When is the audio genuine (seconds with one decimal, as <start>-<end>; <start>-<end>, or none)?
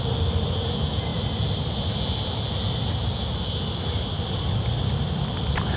0.0-5.8